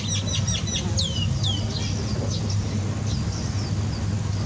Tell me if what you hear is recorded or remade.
recorded